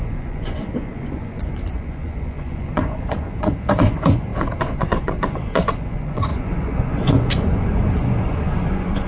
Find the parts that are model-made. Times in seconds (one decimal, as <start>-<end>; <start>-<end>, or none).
0.0-9.1